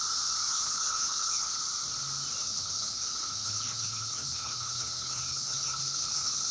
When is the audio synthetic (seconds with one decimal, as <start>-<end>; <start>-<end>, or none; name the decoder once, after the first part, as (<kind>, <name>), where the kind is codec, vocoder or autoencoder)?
0.5-1.6 (codec, HILCodec); 2.4-6.5